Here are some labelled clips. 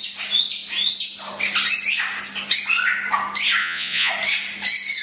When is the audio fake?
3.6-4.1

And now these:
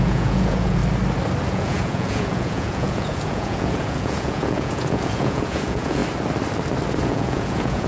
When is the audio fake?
0.0-0.8; 1.5-6.0; 7.0-7.9

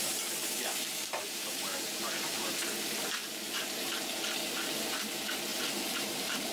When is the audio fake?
1.4-2.5; 3.2-4.2; 5.5-6.5

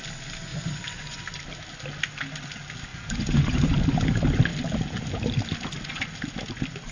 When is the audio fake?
0.5-1.2; 2.9-3.7